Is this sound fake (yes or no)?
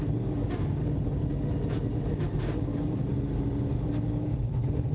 no